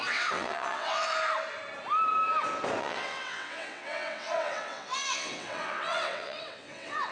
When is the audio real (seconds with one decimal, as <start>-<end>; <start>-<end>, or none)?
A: 1.1-2.8